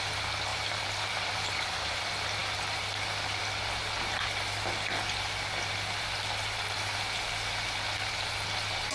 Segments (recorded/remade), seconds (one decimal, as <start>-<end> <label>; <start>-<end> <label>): 0.0-0.5 recorded; 0.5-2.0 remade; 2.0-8.9 recorded